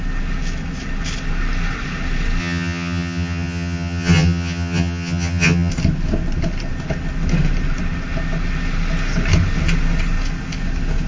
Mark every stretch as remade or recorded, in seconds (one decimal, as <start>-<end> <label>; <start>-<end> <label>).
0.0-2.4 recorded; 2.4-5.7 remade; 5.7-11.1 recorded